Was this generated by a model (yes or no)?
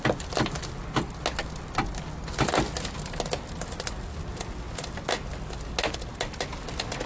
no